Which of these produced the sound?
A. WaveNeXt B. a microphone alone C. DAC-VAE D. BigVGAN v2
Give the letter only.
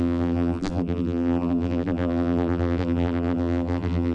D